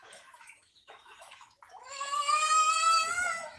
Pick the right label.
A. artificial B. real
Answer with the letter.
A